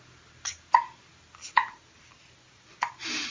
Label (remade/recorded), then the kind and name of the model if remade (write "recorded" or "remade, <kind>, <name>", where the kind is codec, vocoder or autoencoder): recorded